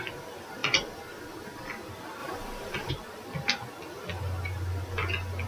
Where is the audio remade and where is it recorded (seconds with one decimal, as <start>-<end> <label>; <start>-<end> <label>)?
0.0-5.5 recorded